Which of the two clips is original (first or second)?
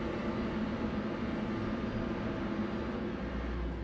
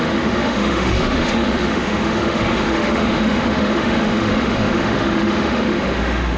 first